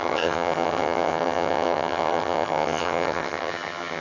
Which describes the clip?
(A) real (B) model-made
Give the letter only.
B